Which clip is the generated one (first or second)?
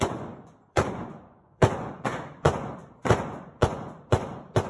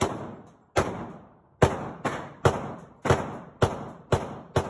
first